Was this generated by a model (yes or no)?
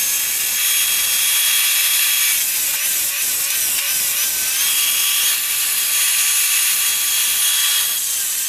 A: no